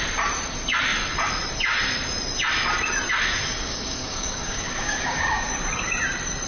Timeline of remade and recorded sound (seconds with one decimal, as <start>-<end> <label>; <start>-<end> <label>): 0.0-3.5 recorded; 3.5-5.5 remade; 5.5-6.5 recorded